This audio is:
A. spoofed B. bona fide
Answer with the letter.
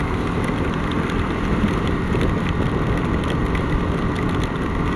A